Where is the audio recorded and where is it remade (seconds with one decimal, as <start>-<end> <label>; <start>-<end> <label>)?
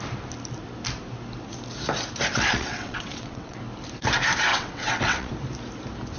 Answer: 0.0-2.3 recorded; 2.3-3.6 remade; 3.6-4.5 recorded; 4.5-5.3 remade; 5.3-6.2 recorded